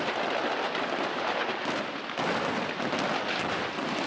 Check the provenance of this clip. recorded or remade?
recorded